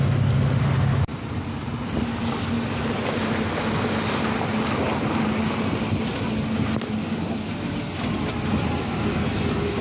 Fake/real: real